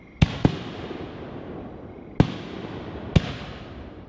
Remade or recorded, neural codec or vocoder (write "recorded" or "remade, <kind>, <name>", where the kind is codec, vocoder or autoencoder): recorded